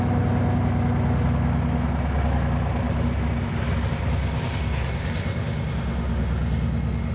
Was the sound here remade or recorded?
recorded